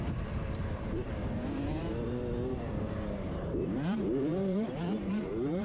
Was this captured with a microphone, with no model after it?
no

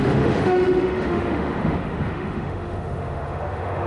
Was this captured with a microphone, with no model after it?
no